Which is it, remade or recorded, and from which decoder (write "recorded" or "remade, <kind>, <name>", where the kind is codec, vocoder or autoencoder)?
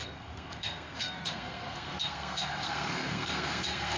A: remade, codec, SNAC